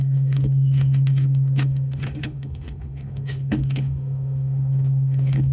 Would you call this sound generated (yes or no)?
yes